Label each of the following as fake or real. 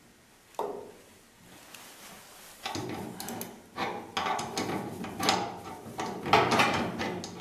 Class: real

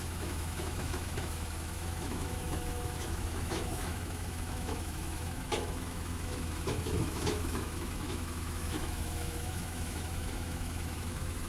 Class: fake